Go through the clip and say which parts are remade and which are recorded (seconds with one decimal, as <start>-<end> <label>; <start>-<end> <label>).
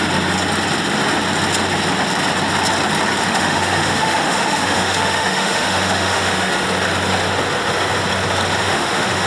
0.0-3.3 recorded; 3.3-6.5 remade; 6.5-8.6 recorded; 8.6-9.3 remade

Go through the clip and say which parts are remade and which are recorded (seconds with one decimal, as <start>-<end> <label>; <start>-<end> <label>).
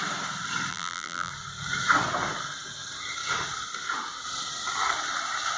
0.0-0.7 recorded; 0.7-1.3 remade; 1.3-5.6 recorded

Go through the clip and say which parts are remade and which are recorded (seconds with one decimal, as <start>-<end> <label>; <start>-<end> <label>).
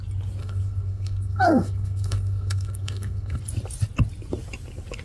0.0-0.4 recorded; 0.4-3.4 remade; 3.4-5.0 recorded